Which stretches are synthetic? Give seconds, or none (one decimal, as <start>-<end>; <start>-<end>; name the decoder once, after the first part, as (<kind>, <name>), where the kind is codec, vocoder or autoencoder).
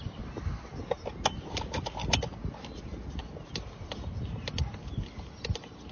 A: none